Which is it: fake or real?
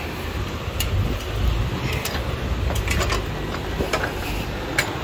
real